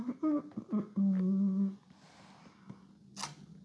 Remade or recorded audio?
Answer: recorded